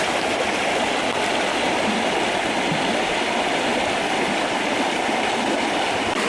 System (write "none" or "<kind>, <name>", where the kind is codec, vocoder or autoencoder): none